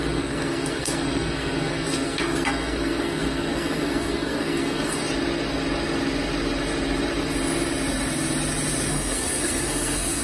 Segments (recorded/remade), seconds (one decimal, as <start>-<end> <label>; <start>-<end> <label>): 0.0-5.0 remade; 5.0-8.9 recorded; 8.9-10.2 remade